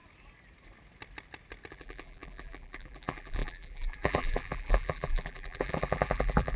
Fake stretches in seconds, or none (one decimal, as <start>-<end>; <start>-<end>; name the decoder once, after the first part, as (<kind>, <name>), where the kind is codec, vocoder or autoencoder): 1.7-6.6 (vocoder, BigVGAN v2)